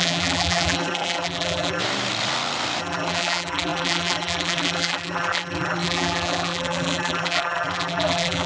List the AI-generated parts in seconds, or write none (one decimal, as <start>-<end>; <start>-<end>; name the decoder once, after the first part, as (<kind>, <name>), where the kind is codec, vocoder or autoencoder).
0.0-1.8 (vocoder, BigVGAN v2); 2.8-8.5